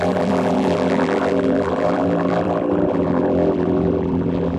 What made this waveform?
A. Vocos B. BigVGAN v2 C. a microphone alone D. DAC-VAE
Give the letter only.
B